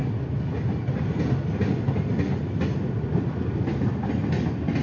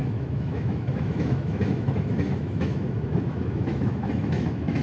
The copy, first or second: second